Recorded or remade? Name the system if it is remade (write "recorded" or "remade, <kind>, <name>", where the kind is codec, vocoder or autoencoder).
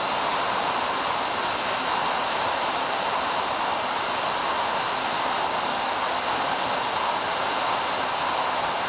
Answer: recorded